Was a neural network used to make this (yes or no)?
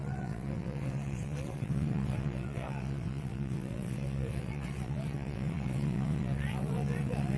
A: yes